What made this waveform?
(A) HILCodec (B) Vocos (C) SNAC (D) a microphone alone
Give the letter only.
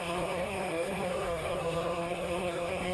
C